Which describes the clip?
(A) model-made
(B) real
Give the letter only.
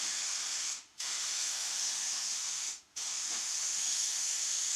A